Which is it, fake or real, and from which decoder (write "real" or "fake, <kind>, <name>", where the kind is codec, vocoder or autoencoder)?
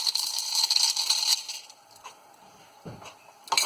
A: real